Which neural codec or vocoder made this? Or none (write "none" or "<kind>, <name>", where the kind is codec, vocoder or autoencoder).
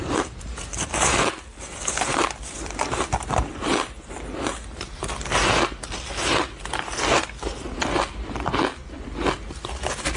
none